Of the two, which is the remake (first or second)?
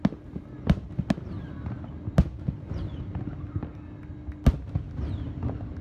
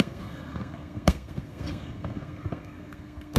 second